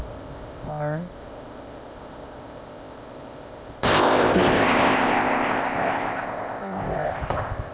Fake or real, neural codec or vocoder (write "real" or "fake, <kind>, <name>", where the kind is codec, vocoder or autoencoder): fake, codec, ZipCodec